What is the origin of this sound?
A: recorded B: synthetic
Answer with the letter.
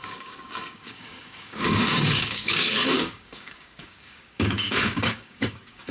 B